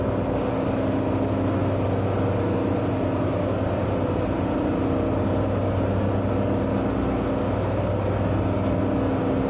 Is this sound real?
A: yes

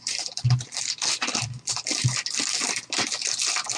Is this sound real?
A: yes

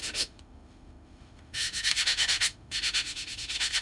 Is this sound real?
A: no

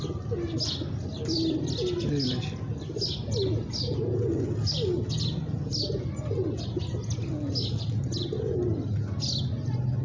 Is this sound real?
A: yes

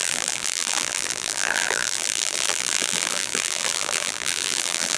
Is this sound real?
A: no